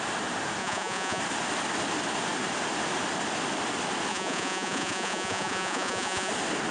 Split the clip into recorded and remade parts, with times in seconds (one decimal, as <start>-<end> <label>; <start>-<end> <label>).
0.0-0.6 recorded; 0.6-1.2 remade; 1.2-4.1 recorded; 4.1-6.3 remade; 6.3-6.7 recorded